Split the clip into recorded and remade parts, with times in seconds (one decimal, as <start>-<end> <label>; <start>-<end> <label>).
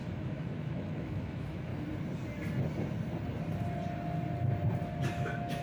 0.0-1.7 remade; 1.7-5.1 recorded; 5.1-5.6 remade